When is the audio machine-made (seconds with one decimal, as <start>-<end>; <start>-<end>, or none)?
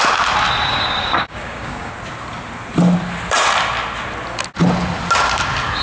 0.7-1.9